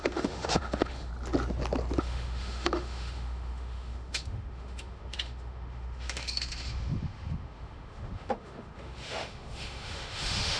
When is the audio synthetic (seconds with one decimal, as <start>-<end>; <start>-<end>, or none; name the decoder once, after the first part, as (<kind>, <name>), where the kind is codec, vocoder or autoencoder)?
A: 0.0-1.1 (autoencoder, DAC-VAE); 2.0-10.6